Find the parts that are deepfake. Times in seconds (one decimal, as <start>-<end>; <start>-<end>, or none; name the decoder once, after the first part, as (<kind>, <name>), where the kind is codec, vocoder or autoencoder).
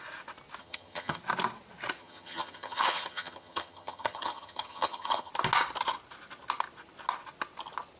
0.6-1.2 (vocoder, HiFi-GAN); 2.0-5.3